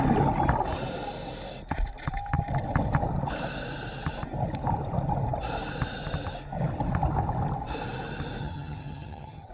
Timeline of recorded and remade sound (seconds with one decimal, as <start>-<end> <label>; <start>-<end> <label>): 0.0-8.4 recorded; 8.4-9.5 remade